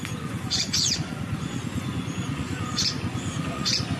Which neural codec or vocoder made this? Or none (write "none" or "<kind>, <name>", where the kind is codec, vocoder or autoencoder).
vocoder, Vocos